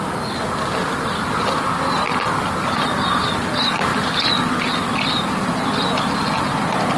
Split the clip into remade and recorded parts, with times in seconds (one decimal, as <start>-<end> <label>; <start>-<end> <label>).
0.0-0.8 recorded; 0.8-2.5 remade; 2.5-3.9 recorded; 3.9-4.7 remade; 4.7-7.0 recorded